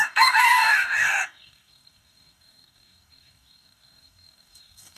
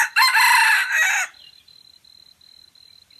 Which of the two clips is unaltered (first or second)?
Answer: second